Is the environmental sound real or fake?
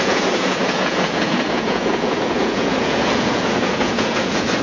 fake